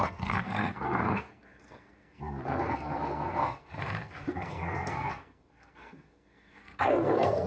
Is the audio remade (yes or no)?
yes